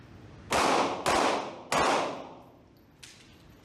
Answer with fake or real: real